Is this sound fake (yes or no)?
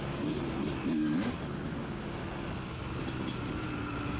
no